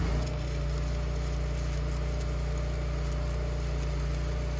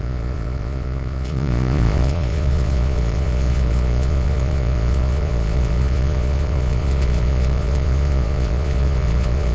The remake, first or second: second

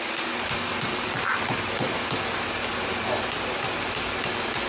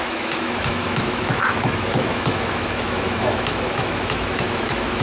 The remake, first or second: second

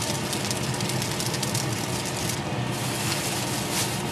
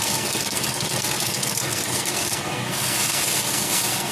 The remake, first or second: second